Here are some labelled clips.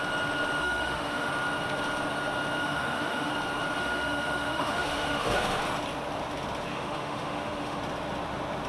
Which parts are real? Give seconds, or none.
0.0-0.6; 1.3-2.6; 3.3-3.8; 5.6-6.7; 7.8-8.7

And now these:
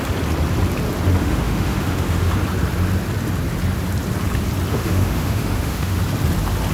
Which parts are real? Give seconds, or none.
0.0-1.2; 2.3-4.7; 6.0-6.7